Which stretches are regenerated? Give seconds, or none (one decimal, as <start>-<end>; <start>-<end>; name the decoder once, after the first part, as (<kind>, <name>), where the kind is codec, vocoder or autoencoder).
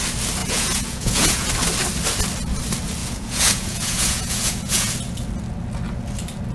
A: 0.4-1.5 (vocoder, Vocos); 3.0-4.9